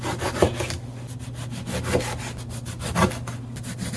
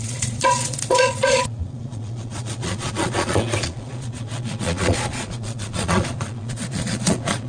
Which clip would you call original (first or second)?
first